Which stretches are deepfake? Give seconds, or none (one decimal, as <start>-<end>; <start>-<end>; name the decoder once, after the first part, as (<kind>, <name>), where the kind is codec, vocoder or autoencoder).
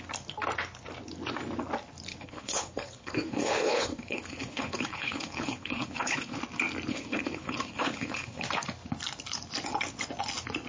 2.1-6.4 (codec, HILCodec); 6.9-8.4